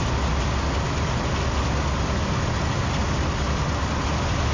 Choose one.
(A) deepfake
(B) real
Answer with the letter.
B